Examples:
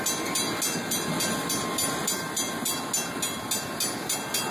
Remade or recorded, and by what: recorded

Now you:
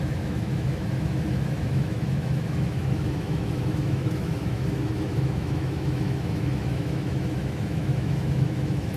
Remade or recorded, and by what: remade, autoencoder, DAC-VAE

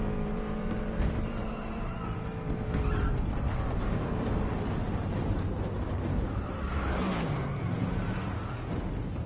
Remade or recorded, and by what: remade, vocoder, BigVGAN v2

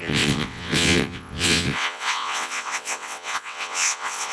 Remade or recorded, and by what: remade, vocoder, WaveNeXt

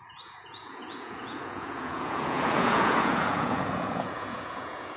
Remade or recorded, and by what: remade, vocoder, Vocos